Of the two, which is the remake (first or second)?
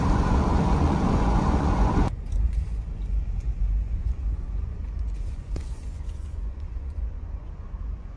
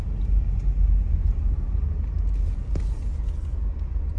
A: first